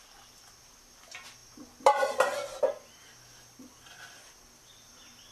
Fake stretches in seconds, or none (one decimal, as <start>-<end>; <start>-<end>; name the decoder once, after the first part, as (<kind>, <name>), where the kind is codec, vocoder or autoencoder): none